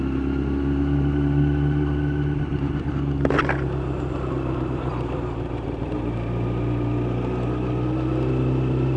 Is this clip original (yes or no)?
no